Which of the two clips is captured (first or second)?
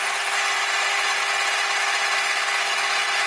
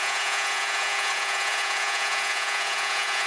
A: first